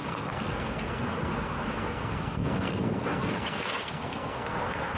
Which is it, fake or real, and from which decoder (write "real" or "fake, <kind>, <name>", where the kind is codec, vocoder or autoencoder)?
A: fake, codec, SNAC